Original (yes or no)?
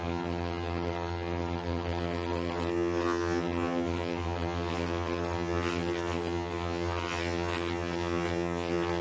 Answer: no